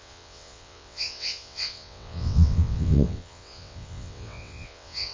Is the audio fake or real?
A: fake